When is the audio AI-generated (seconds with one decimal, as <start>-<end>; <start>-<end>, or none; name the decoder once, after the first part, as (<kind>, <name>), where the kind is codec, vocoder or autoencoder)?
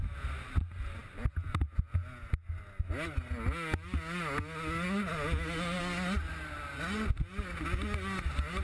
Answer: none